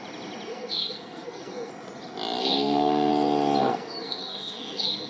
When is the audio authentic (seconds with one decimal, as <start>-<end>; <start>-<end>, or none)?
0.0-0.5; 1.7-2.4; 3.1-3.6

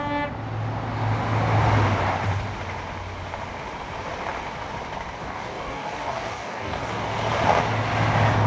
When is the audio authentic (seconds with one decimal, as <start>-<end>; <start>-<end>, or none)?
0.0-5.2; 7.0-8.5